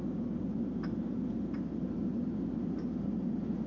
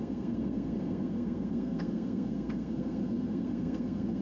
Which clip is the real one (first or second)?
first